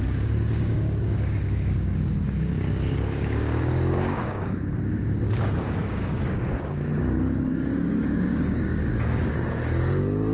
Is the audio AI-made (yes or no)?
yes